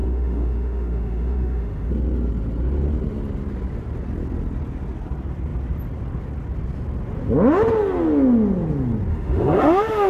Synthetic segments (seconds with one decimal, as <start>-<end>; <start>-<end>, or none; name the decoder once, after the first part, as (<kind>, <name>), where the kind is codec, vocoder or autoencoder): 0.0-1.9 (autoencoder, DAC-VAE); 9.1-10.1